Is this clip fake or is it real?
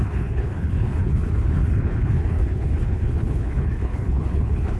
fake